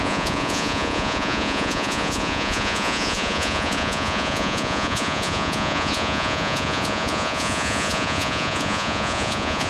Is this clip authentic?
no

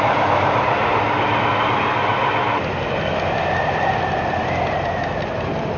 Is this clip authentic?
yes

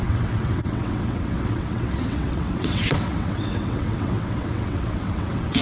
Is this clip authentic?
no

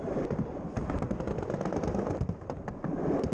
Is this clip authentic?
yes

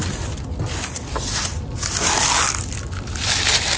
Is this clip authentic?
yes